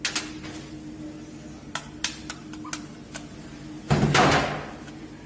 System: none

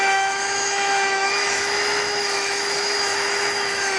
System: autoencoder, DAC-VAE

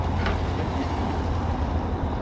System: none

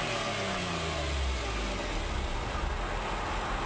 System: none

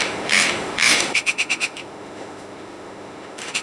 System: autoencoder, DAC-VAE